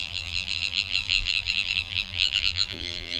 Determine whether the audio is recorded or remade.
remade